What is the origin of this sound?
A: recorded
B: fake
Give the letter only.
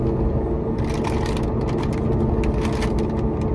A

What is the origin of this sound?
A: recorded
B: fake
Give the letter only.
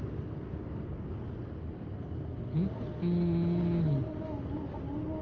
A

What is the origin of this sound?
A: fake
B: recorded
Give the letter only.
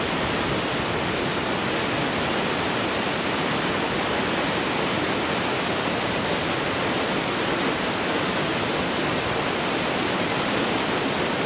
B